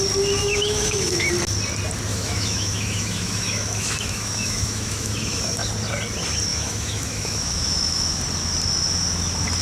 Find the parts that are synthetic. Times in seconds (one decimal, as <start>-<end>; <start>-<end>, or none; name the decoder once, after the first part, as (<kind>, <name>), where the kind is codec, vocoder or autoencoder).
0.4-1.3 (autoencoder, DAC-VAE); 2.1-5.4; 6.5-8.2